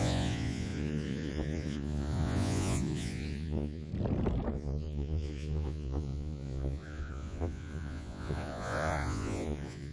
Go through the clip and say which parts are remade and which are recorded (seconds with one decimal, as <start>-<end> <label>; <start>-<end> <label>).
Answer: 0.0-3.9 remade; 3.9-4.5 recorded; 4.5-9.9 remade